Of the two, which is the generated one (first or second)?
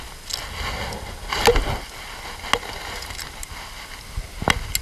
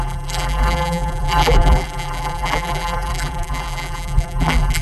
second